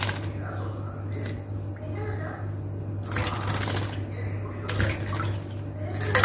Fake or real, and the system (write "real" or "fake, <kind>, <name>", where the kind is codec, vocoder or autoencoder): real